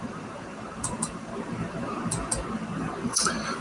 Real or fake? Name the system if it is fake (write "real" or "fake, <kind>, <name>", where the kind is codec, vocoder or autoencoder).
fake, vocoder, BigVGAN v2